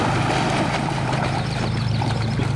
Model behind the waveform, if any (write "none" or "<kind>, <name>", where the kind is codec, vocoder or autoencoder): vocoder, BigVGAN v2